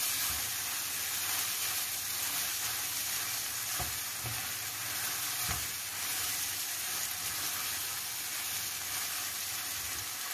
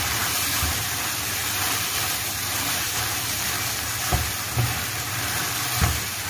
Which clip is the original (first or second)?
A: first